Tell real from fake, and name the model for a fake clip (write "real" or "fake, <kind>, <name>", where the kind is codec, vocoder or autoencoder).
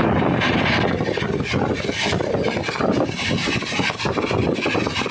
real